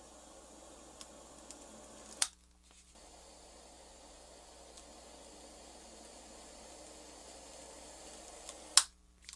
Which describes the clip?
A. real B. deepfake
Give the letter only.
A